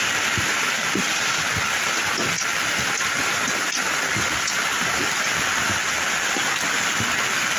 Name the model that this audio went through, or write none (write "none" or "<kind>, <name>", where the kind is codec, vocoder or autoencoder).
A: none